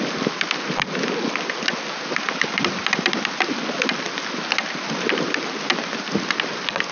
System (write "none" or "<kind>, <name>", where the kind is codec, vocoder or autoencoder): none